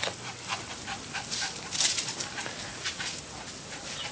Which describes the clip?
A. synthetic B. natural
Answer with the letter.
B